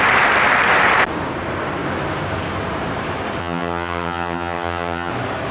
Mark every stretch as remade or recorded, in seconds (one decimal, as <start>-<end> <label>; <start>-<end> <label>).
0.0-3.4 recorded; 3.4-5.1 remade; 5.1-5.5 recorded